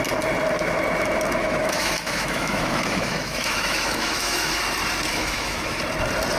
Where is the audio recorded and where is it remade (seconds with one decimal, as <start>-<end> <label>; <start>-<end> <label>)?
0.0-1.4 recorded; 1.4-4.6 remade; 4.6-5.1 recorded; 5.1-5.8 remade; 5.8-6.4 recorded